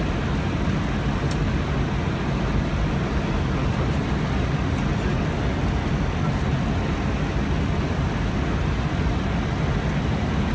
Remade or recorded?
recorded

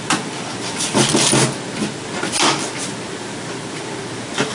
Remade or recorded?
recorded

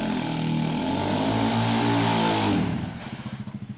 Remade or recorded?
recorded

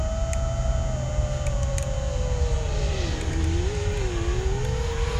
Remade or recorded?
recorded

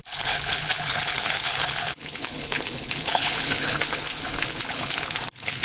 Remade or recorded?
remade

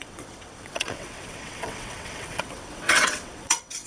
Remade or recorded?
remade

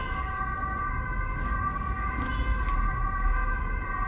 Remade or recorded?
recorded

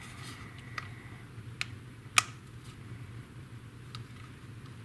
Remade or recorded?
recorded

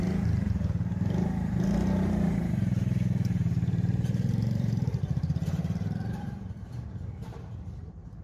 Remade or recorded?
remade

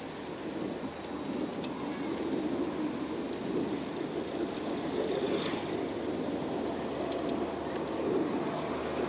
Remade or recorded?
recorded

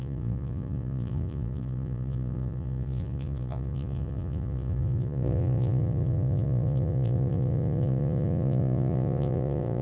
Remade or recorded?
remade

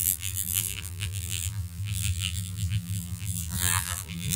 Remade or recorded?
remade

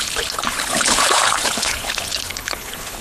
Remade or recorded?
remade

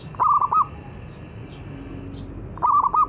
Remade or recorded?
recorded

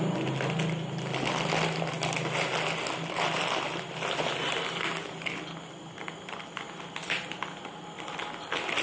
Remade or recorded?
recorded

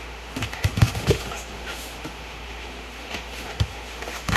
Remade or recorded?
remade